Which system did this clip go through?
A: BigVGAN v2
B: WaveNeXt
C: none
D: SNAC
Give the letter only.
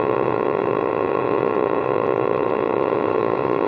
B